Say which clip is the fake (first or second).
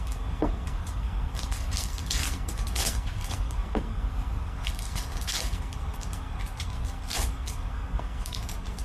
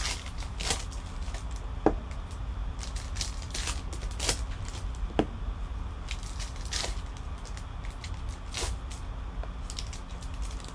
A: first